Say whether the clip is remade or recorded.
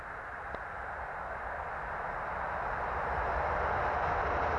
recorded